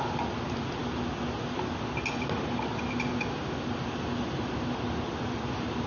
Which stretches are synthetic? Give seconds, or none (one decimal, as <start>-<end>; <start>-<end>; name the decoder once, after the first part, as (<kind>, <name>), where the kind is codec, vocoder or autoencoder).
none